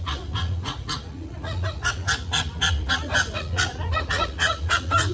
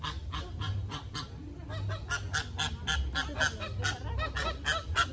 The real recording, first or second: second